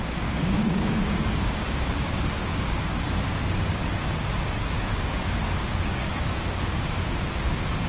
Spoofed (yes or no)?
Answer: yes